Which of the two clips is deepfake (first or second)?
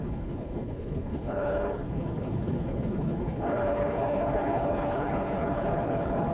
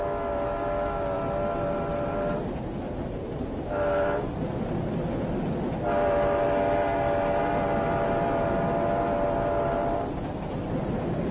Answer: first